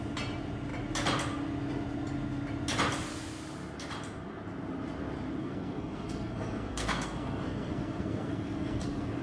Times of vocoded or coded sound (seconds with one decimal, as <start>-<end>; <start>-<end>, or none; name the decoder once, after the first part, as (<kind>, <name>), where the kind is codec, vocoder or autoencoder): 5.4-9.2 (codec, SNAC)